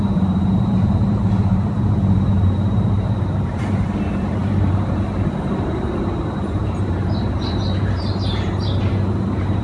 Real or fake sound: fake